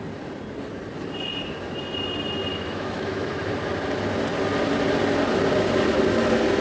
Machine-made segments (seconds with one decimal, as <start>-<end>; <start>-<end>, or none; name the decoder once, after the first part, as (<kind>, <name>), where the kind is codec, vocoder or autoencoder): 2.5-3.5 (autoencoder, DAC-VAE)